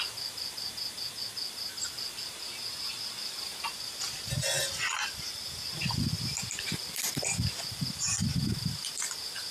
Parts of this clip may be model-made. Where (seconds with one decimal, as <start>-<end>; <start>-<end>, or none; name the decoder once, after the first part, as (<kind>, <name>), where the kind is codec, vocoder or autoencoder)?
none